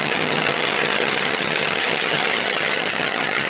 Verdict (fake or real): fake